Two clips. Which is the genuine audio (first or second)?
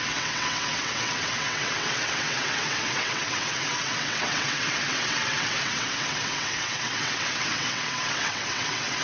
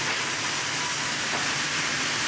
second